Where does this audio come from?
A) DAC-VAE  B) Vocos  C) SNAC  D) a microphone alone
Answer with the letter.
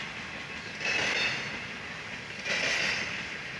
D